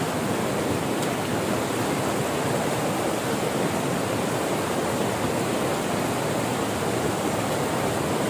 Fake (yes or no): no